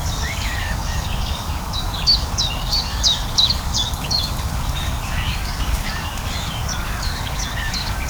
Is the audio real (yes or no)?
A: no